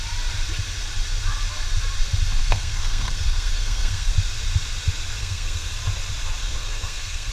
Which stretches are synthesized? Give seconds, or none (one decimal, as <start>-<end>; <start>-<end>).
2.4-4.1; 5.2-5.7; 6.4-7.3